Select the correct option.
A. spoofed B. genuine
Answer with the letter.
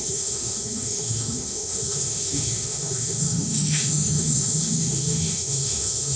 A